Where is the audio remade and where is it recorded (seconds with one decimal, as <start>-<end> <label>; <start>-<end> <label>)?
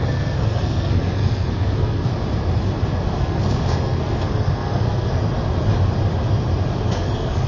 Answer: 0.0-2.1 remade; 2.1-3.2 recorded; 3.2-5.2 remade; 5.2-6.9 recorded; 6.9-7.5 remade